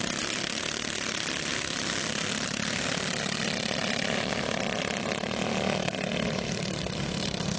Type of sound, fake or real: real